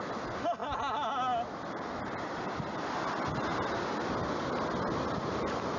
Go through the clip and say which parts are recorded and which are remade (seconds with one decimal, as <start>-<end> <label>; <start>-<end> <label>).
0.0-5.8 recorded